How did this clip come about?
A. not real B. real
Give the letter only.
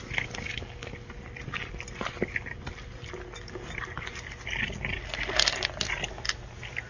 B